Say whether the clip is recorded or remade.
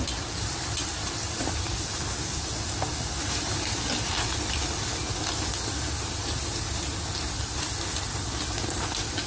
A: recorded